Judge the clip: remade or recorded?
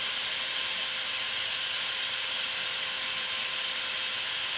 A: recorded